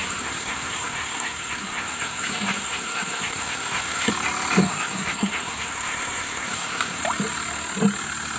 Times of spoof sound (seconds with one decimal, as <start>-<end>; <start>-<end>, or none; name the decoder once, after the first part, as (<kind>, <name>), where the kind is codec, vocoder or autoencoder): 0.0-4.1 (codec, SNAC); 4.6-7.0